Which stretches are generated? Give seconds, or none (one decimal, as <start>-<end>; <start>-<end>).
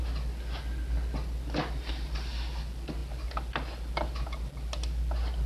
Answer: none